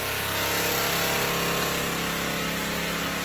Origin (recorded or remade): recorded